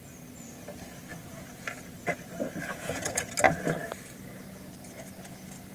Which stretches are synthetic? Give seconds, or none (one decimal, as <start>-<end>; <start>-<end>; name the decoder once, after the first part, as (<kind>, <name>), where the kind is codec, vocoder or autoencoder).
1.1-1.8 (vocoder, Vocos); 2.7-3.3